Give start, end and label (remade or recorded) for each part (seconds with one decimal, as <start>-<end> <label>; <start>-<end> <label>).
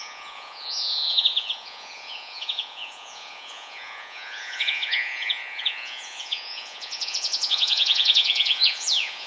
0.0-9.3 remade